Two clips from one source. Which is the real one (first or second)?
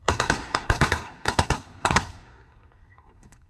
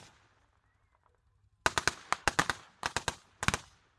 second